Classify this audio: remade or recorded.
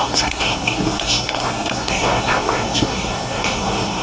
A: remade